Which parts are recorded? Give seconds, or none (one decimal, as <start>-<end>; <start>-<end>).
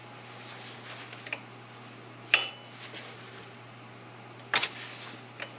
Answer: 0.0-5.6